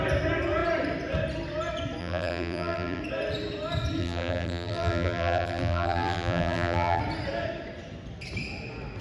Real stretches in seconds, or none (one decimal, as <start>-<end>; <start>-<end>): 0.0-2.0; 3.0-4.0; 7.0-9.0